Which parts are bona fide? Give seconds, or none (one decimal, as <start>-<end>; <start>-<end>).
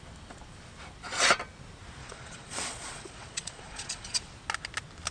0.0-2.0; 4.2-5.1